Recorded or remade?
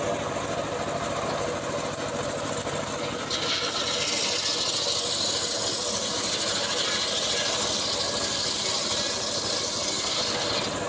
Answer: recorded